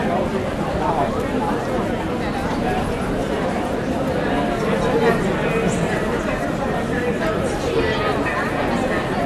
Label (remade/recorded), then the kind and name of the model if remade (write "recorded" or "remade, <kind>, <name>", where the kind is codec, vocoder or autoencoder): recorded